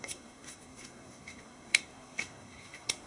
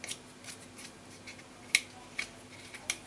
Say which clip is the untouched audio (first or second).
second